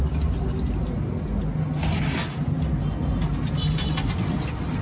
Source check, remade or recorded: recorded